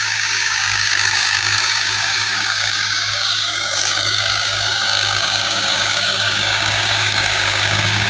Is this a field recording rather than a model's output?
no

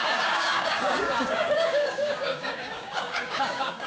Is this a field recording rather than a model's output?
no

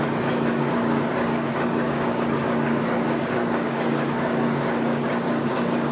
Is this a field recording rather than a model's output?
no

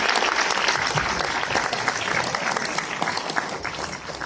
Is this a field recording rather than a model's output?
yes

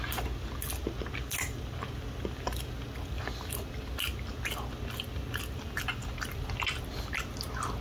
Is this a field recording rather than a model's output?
yes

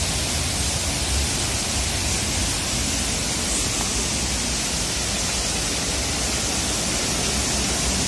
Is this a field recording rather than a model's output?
yes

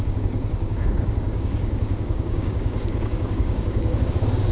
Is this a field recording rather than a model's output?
no